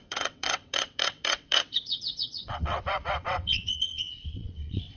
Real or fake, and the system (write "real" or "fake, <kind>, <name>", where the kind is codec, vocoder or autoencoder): fake, vocoder, WaveNeXt